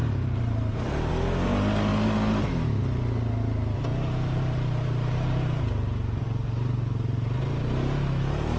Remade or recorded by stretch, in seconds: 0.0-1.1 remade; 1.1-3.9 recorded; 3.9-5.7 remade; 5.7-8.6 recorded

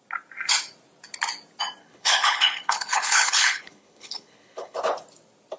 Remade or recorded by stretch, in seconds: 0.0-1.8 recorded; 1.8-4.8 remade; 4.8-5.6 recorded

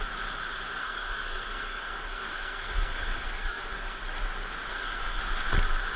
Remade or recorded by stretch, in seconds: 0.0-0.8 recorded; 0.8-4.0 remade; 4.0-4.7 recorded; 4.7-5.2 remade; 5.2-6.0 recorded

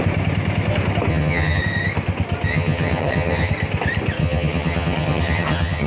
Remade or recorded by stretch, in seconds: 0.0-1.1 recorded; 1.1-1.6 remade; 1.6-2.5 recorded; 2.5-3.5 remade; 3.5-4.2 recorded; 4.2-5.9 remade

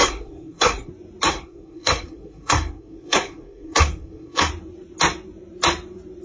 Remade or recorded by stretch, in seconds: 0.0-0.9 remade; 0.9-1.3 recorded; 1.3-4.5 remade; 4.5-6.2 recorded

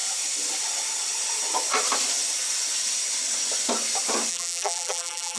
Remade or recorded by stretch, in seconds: 0.0-4.3 recorded; 4.3-5.4 remade